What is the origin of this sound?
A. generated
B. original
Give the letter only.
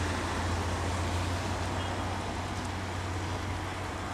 B